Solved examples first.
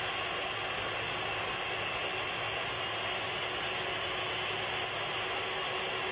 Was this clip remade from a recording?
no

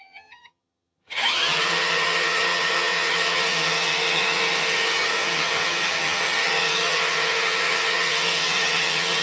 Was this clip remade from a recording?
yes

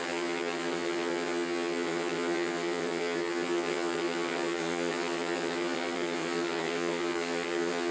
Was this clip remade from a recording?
yes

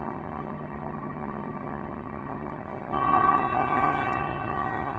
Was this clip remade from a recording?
yes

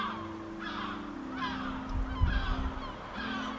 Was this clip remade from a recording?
no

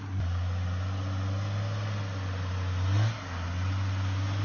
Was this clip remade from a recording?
no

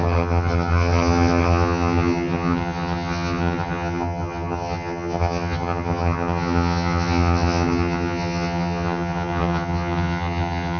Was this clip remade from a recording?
yes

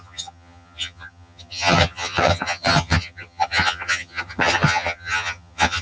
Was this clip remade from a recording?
yes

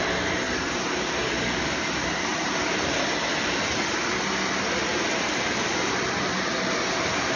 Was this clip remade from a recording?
no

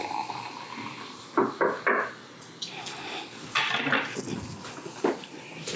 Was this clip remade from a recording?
no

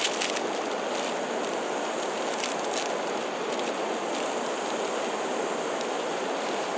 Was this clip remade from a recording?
no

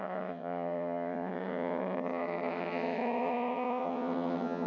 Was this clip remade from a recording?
yes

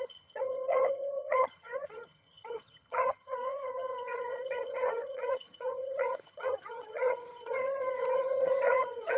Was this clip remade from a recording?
yes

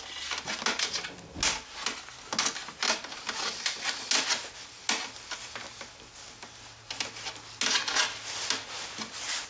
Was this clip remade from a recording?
no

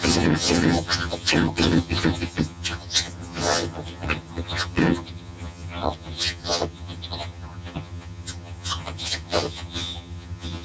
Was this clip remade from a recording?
yes